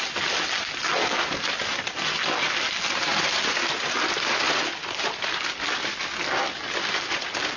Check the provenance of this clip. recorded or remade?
recorded